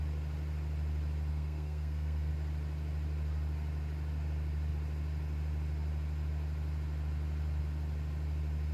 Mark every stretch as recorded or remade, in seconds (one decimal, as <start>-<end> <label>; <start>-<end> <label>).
0.0-1.3 recorded; 1.3-2.3 remade; 2.3-8.7 recorded